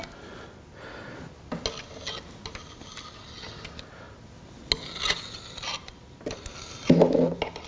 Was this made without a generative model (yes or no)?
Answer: yes